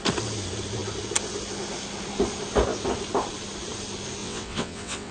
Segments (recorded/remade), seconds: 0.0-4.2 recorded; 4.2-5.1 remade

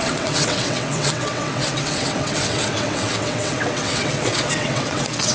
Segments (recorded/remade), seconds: 0.0-5.3 remade